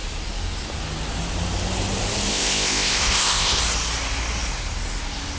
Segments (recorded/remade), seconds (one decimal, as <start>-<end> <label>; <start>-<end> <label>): 0.0-2.3 recorded; 2.3-3.6 remade; 3.6-5.4 recorded